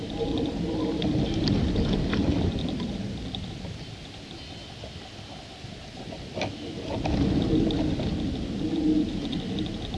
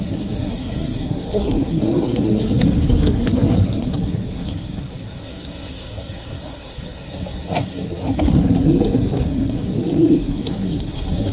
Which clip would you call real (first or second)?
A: first